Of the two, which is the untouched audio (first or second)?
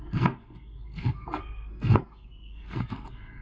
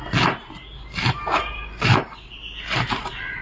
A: second